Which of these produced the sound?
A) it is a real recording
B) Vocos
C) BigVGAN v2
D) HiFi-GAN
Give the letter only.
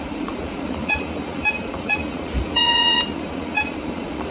B